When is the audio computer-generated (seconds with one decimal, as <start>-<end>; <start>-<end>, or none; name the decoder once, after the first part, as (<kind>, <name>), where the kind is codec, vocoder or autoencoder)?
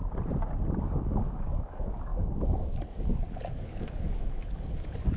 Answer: 0.8-5.2 (codec, DAC)